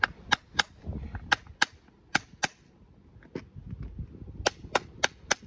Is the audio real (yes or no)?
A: yes